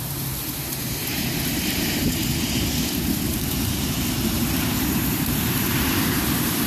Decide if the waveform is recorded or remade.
remade